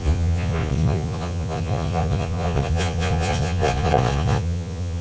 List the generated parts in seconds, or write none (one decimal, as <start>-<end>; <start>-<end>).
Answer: 0.0-5.0

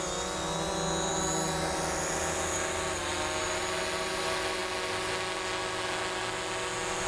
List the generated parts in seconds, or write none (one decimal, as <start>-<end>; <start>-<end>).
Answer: none

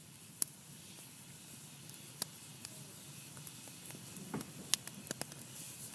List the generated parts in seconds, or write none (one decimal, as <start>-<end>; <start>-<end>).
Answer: 0.0-0.6

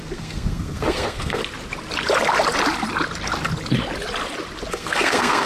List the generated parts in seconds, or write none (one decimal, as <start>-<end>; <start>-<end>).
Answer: 0.0-1.4; 4.7-5.5

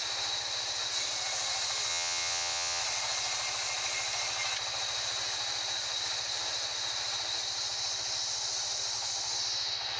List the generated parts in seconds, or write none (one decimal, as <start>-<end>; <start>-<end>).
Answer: 1.9-2.8

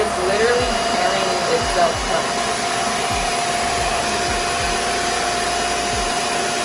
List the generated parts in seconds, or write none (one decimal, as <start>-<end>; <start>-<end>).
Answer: none

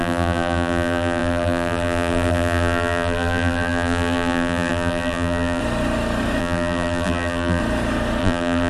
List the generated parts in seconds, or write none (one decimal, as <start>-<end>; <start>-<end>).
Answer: 0.0-5.6; 6.4-7.6; 8.2-8.7